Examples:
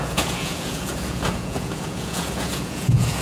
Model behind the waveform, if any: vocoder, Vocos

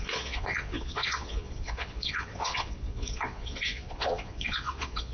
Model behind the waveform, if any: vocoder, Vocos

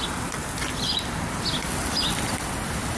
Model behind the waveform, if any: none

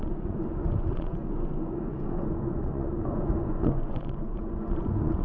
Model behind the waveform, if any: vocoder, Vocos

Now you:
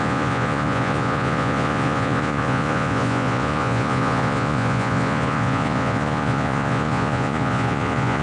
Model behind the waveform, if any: vocoder, Vocos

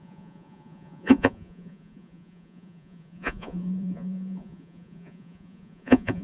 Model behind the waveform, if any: vocoder, Vocos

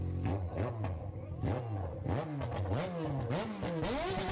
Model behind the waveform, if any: none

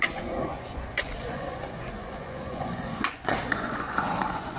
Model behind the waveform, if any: vocoder, Vocos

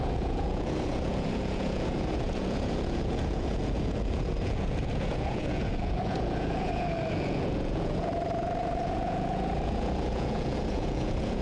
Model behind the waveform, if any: vocoder, Vocos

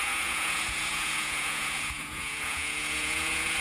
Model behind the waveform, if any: vocoder, Vocos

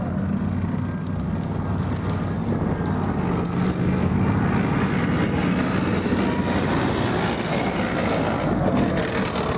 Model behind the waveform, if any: none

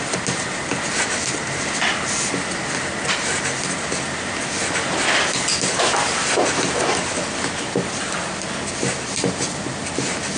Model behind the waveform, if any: none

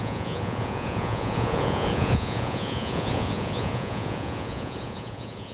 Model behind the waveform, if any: vocoder, Vocos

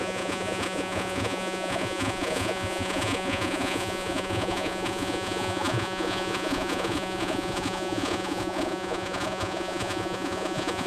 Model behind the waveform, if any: vocoder, Vocos